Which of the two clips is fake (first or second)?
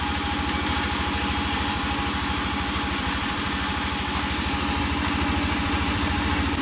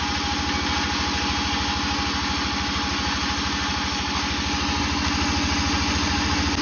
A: first